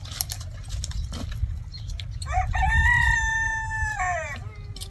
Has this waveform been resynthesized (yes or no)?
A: no